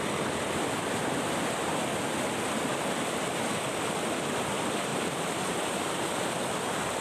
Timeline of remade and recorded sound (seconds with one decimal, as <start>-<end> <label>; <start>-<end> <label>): 0.0-4.9 recorded; 4.9-6.1 remade; 6.1-7.0 recorded